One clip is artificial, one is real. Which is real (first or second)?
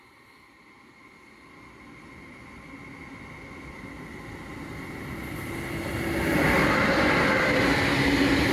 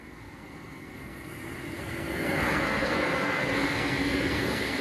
first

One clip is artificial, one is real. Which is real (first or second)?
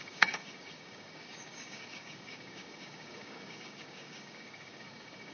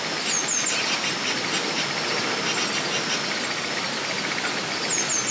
second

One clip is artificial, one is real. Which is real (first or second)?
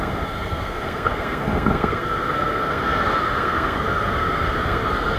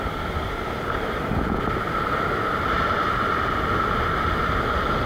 second